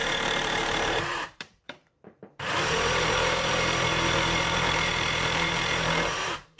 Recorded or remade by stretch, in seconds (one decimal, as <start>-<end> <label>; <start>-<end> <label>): 0.0-6.6 remade